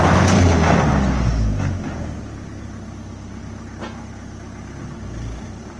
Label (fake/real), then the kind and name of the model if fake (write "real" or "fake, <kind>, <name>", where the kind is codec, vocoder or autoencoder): real